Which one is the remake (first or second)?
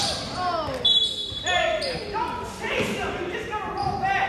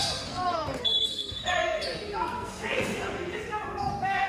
second